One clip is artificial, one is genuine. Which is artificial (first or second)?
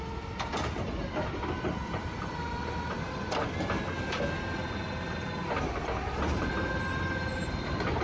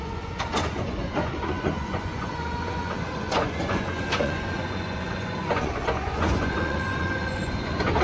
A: second